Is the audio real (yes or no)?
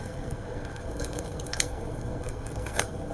no